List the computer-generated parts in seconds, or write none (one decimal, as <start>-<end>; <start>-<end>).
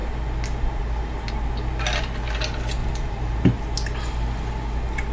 2.8-3.6